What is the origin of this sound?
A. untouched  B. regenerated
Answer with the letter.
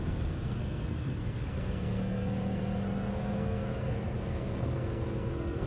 B